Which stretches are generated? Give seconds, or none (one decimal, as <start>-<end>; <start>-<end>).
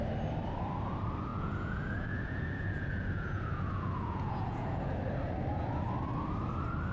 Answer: 1.3-4.9